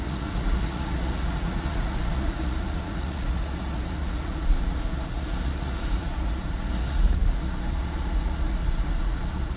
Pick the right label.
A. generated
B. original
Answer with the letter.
A